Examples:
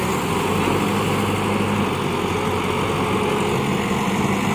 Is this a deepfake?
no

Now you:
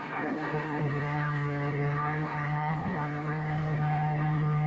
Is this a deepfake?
yes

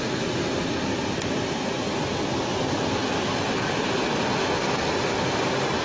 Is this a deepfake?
no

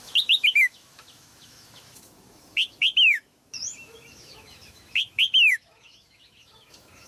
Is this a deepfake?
yes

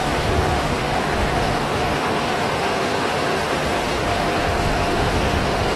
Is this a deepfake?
yes